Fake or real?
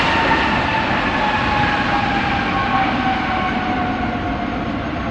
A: real